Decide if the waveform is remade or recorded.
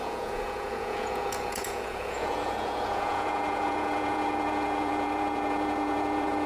remade